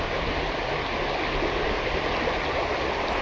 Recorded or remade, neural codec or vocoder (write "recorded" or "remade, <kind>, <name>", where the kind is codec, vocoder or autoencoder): recorded